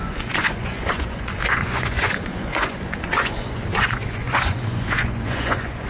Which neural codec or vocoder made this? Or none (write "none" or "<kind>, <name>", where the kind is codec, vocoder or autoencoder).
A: vocoder, Vocos